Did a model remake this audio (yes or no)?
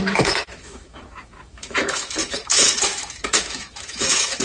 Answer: yes